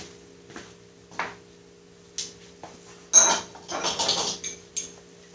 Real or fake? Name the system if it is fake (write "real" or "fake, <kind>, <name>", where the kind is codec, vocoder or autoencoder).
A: real